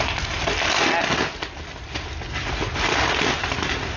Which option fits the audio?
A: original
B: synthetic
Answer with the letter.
A